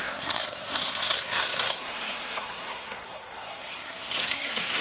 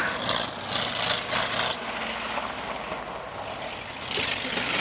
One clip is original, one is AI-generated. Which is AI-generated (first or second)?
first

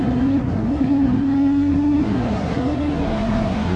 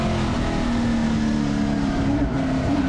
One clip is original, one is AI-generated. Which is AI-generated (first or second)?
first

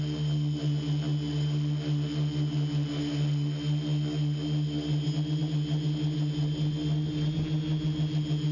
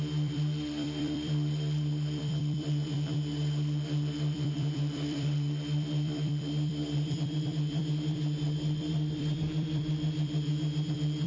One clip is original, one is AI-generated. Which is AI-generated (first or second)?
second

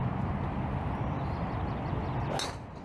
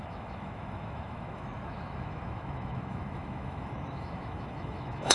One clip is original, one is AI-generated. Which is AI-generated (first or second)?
second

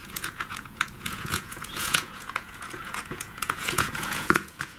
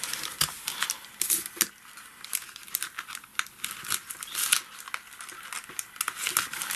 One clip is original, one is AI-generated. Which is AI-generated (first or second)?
first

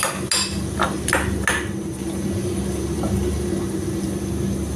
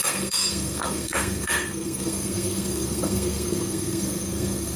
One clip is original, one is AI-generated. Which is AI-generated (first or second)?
second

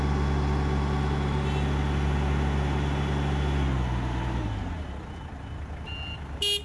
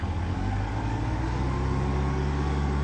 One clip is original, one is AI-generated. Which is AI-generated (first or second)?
second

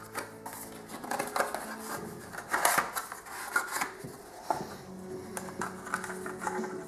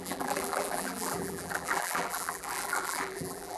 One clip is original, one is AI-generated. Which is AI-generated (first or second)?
second